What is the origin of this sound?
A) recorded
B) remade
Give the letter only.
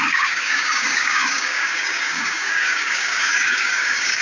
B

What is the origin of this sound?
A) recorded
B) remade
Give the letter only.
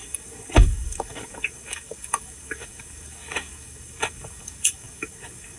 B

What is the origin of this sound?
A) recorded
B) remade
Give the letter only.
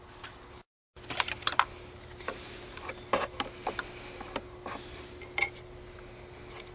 A